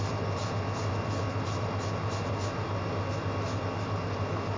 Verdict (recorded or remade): recorded